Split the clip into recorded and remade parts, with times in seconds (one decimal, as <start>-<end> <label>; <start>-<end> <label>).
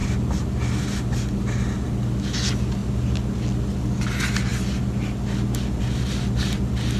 0.0-7.0 recorded